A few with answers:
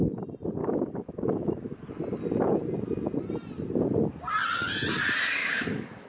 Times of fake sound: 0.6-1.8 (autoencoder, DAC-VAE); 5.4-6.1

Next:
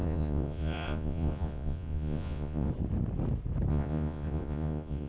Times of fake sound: 0.0-2.7 (vocoder, Vocos); 3.7-5.1